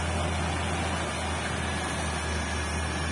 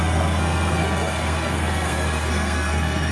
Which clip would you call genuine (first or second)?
first